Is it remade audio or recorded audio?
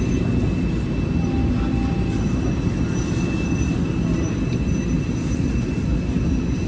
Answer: recorded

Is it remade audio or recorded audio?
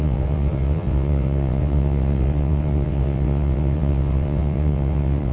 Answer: remade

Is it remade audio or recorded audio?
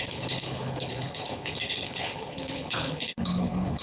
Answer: remade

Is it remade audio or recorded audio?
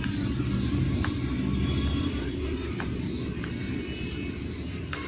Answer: recorded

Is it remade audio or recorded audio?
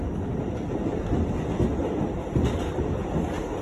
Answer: recorded